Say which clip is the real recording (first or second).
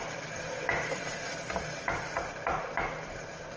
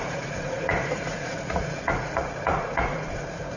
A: first